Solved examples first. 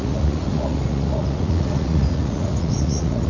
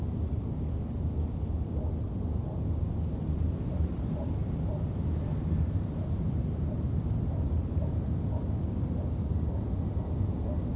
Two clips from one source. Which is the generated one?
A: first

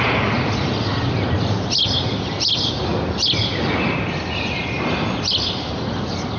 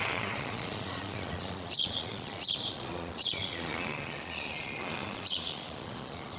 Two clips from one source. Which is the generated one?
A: second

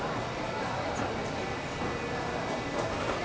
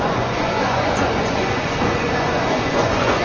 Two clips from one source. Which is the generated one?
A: second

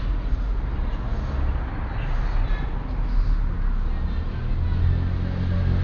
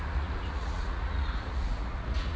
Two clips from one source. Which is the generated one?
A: second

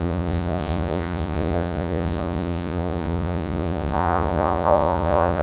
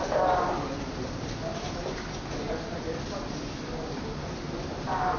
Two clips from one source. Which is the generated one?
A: first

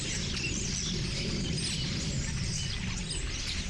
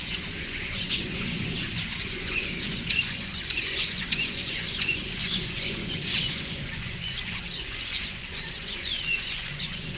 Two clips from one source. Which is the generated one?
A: second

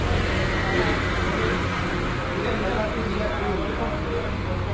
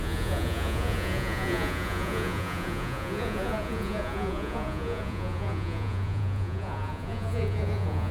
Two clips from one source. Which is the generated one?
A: second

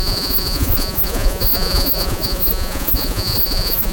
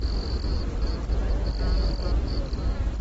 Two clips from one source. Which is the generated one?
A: first